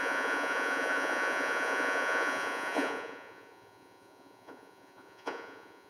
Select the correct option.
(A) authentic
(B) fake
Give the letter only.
B